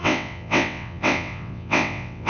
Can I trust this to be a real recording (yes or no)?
no